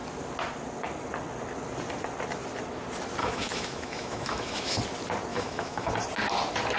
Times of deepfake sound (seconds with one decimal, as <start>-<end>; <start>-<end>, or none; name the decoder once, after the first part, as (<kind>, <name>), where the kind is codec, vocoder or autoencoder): 3.2-4.8 (autoencoder, DAC-VAE); 5.3-5.9